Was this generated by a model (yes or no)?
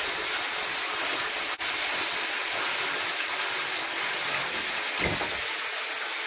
no